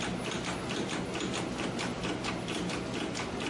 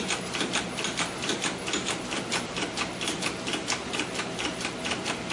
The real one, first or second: first